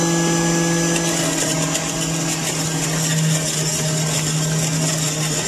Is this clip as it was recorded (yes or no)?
yes